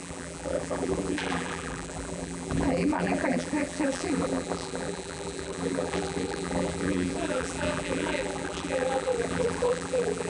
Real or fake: fake